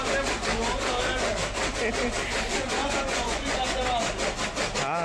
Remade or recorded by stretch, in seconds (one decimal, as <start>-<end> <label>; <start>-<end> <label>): 0.0-2.8 recorded; 2.8-3.8 remade; 3.8-5.0 recorded